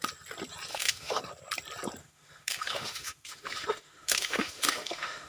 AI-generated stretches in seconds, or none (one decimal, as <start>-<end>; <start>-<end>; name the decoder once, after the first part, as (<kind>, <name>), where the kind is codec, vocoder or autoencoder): 0.7-1.2 (autoencoder, DAC-VAE); 2.0-5.3